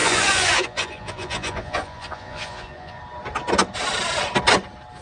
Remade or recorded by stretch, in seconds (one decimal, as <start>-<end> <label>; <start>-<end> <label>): 0.0-3.0 remade; 3.0-5.0 recorded